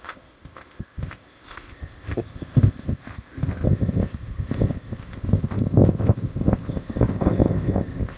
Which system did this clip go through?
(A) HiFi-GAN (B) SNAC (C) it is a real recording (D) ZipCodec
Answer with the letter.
D